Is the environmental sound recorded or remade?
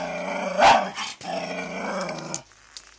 recorded